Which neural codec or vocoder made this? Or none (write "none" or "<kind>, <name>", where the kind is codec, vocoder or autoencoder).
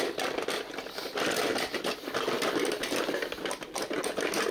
none